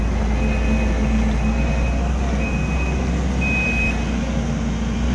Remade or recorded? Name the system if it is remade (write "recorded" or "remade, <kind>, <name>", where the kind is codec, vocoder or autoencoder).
recorded